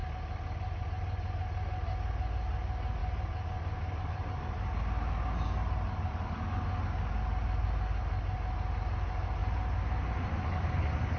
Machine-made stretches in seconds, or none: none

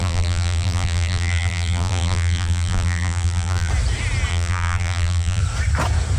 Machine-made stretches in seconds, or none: 0.0-3.7 (vocoder, BigVGAN v2); 4.3-5.4

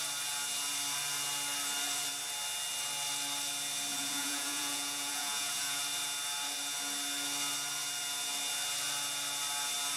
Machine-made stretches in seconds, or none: 3.9-5.8 (vocoder, Vocos)

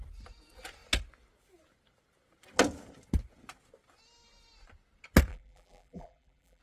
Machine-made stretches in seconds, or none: 5.3-6.6 (vocoder, BigVGAN v2)